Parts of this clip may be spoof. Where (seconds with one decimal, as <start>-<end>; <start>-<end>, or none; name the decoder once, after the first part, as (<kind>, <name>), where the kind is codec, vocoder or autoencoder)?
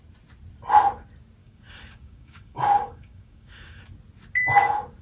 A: 1.4-3.8 (codec, DAC)